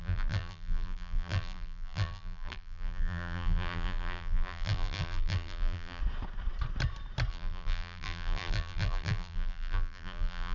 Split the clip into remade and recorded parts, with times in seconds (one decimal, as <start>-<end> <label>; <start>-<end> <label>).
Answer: 0.0-6.0 remade; 6.0-7.3 recorded; 7.3-10.5 remade